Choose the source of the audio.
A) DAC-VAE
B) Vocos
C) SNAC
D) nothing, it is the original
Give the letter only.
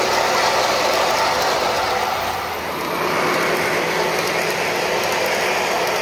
D